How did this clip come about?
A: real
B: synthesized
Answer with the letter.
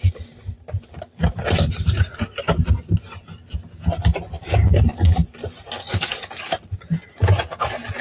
A